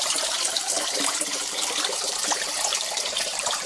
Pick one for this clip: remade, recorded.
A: remade